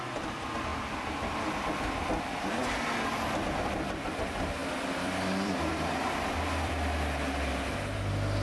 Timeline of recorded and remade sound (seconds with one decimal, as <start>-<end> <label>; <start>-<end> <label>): 0.0-0.7 recorded; 0.7-2.2 remade; 2.2-4.6 recorded; 4.6-6.7 remade; 6.7-8.4 recorded